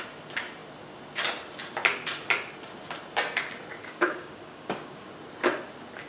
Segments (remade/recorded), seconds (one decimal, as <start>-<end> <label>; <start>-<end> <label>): 0.0-3.8 recorded; 3.8-5.1 remade; 5.1-6.1 recorded